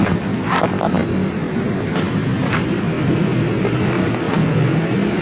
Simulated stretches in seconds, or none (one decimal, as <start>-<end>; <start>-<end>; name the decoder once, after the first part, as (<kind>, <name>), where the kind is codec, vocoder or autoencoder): none